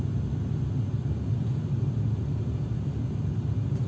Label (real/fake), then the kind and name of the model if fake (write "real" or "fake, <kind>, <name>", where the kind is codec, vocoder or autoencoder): real